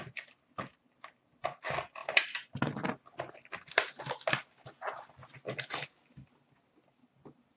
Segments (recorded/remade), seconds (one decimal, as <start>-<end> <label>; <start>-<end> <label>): 0.0-7.6 recorded